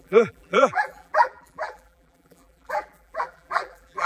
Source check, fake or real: fake